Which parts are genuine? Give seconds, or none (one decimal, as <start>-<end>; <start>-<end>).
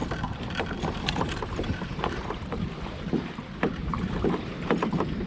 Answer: 0.0-1.2